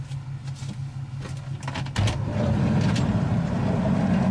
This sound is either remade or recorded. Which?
recorded